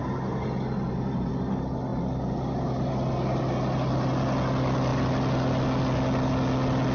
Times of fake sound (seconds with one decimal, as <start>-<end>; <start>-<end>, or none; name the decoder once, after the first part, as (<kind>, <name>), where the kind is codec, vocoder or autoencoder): none